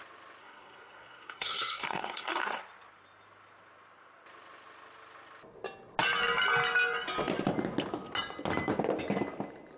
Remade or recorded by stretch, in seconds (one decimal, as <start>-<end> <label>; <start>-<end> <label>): 0.0-0.4 recorded; 0.4-2.6 remade; 2.6-9.8 recorded